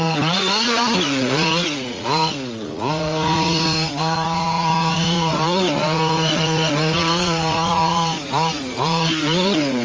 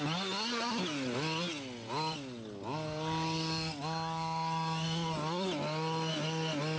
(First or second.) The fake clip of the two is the first